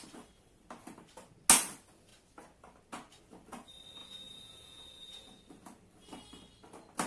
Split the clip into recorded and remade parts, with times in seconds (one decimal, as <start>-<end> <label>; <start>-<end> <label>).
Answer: 0.0-4.0 recorded; 4.0-5.4 remade; 5.4-7.1 recorded